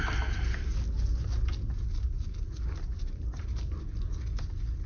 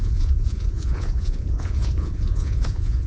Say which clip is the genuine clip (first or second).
first